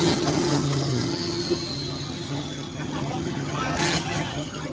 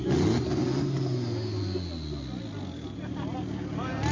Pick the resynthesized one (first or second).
first